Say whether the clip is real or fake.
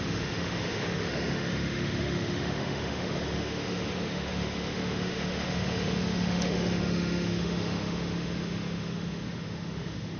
fake